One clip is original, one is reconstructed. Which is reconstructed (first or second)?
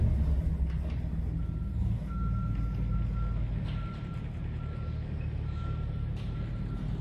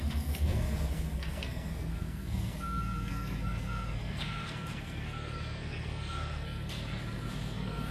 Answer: second